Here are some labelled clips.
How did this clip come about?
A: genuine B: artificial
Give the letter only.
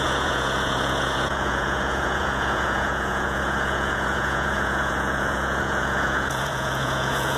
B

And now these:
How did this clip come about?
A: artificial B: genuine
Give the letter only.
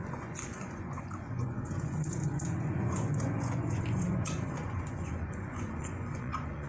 A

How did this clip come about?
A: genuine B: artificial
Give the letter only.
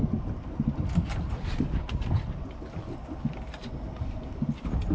A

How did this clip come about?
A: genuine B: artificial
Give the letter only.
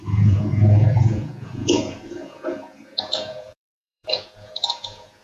B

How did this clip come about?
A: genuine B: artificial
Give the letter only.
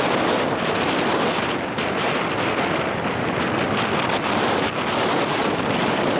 A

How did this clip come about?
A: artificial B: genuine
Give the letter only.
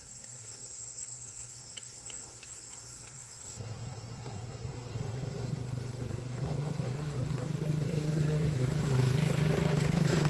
A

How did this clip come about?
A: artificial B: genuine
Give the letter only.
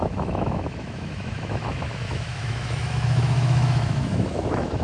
A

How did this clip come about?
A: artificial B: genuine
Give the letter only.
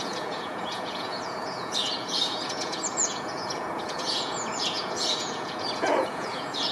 A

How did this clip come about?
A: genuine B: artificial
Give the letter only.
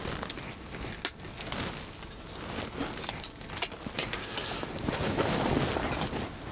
A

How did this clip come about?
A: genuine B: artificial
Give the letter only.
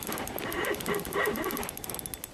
A